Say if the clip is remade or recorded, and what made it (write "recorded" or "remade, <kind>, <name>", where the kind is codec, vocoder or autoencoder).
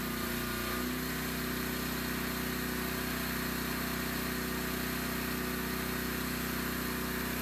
recorded